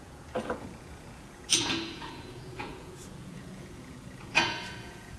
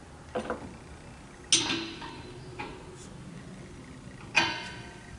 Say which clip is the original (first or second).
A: second